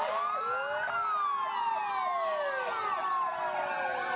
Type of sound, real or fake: real